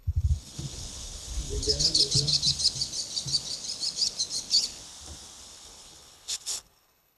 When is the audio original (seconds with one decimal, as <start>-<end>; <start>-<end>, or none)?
4.8-5.4